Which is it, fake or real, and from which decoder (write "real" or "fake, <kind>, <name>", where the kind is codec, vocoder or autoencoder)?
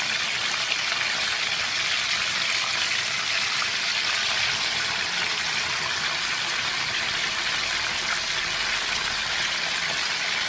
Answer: real